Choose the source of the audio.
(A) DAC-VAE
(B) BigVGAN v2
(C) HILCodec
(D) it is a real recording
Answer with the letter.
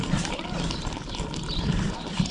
B